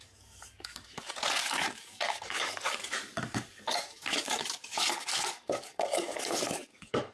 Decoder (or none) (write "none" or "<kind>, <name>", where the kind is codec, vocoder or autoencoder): codec, DAC